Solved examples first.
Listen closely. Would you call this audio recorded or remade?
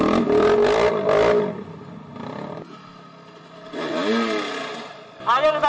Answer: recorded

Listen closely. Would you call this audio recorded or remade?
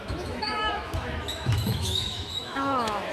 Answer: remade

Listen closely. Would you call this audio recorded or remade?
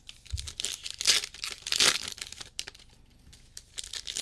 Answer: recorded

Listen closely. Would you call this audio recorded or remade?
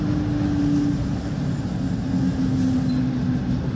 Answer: recorded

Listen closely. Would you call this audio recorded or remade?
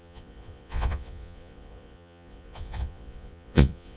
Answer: remade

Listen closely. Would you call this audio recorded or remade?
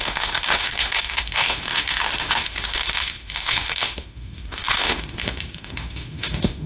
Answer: remade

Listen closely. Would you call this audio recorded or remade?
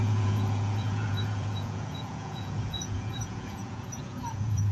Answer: remade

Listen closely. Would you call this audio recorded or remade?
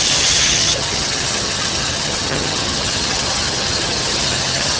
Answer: remade